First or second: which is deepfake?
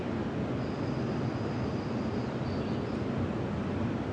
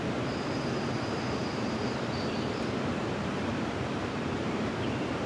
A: second